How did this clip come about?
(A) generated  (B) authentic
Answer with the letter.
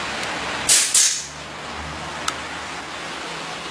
B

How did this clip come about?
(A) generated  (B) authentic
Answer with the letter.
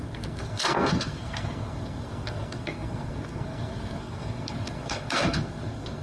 A